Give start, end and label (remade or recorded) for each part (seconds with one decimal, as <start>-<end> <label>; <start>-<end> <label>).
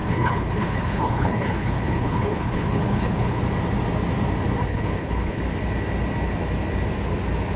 0.0-3.4 remade; 3.4-4.7 recorded; 4.7-5.4 remade; 5.4-7.6 recorded